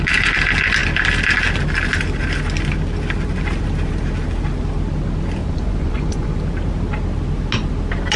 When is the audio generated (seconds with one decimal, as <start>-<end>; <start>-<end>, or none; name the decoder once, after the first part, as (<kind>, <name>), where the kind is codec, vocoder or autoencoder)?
5.4-6.4 (vocoder, Vocos)